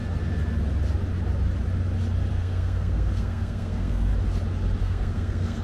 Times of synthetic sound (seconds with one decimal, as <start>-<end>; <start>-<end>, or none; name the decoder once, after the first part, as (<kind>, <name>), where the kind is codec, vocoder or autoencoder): 2.3-4.1 (codec, SNAC); 4.8-5.6